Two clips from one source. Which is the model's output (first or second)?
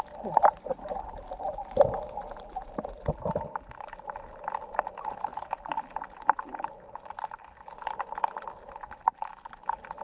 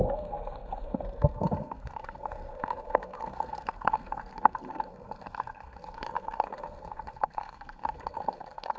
second